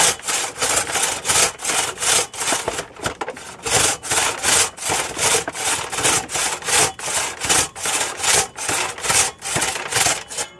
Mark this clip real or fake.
real